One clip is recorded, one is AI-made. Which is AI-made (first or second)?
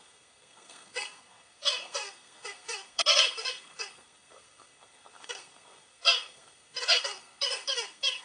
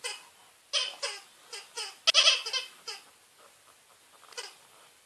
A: first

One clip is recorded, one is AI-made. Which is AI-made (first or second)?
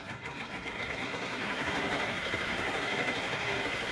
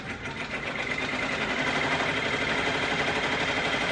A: first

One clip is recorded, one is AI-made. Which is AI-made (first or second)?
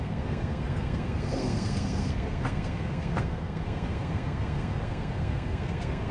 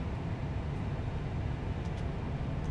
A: first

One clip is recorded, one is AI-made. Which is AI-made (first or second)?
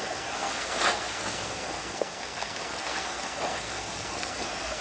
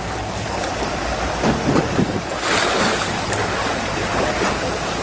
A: first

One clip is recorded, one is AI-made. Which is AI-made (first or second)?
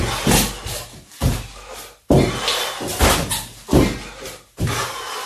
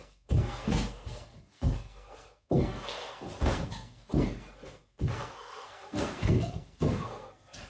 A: second